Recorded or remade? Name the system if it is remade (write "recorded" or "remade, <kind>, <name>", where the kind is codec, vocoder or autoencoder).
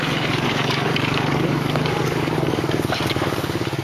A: remade, codec, DAC